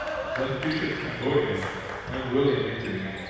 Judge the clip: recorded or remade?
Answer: recorded